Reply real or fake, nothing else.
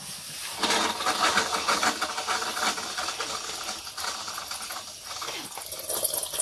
real